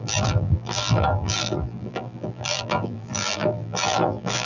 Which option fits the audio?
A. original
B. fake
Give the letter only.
B